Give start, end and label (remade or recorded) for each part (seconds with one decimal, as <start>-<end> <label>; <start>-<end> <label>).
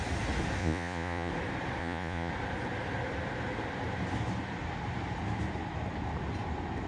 0.0-0.6 recorded; 0.6-1.3 remade; 1.3-1.8 recorded; 1.8-2.3 remade; 2.3-6.9 recorded